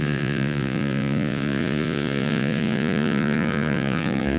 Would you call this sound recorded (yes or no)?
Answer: no